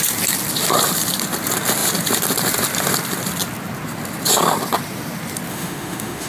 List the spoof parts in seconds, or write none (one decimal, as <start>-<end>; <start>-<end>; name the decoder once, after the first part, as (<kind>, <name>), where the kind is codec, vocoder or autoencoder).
5.5-6.3 (autoencoder, DAC-VAE)